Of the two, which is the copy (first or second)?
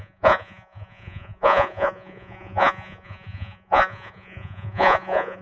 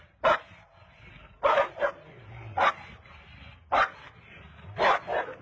first